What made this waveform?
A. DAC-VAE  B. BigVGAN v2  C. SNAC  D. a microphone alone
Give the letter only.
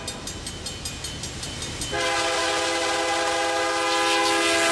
D